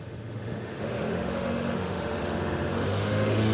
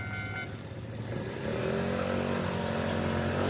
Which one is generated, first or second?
first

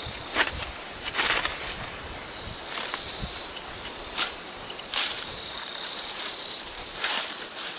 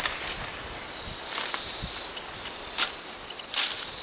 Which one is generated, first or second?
first